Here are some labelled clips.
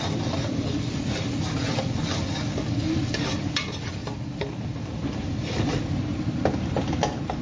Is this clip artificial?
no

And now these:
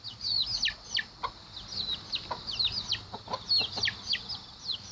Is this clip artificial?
no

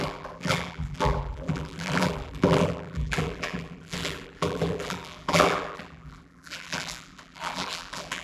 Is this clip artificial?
yes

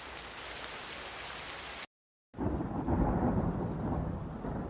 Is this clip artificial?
no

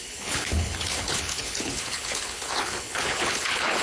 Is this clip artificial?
yes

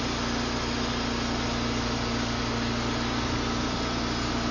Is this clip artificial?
no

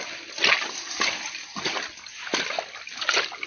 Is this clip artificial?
no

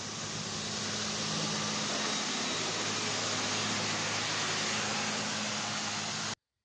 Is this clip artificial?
no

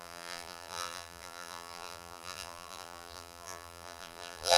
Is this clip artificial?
yes